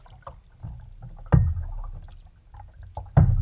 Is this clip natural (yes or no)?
yes